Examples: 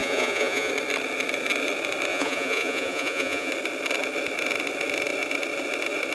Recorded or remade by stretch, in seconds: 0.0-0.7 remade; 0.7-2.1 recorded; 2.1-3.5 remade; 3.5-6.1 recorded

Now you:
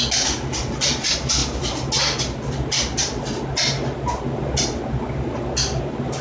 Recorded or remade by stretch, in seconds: 0.0-6.2 recorded

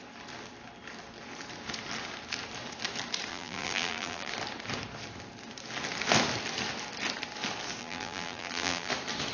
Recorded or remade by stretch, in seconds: 0.0-3.3 recorded; 3.3-4.3 remade; 4.3-7.8 recorded; 7.8-8.9 remade; 8.9-9.3 recorded

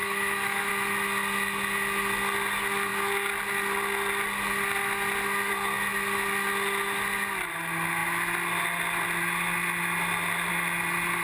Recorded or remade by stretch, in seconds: 0.0-0.7 remade; 0.7-11.2 recorded

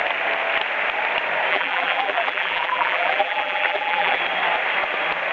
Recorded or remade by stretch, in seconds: 0.0-1.5 recorded; 1.5-4.2 remade; 4.2-5.3 recorded

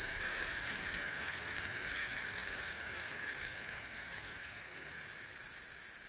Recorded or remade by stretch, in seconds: 0.0-5.0 remade; 5.0-6.1 recorded

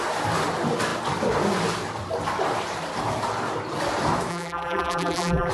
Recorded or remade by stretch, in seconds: 0.0-4.3 recorded; 4.3-5.5 remade